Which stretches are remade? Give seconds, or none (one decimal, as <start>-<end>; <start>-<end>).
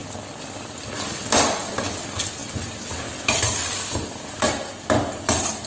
none